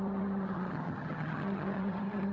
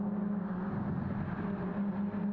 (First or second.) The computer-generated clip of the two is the first